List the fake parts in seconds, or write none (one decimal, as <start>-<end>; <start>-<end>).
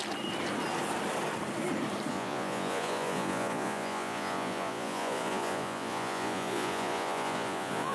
2.1-7.9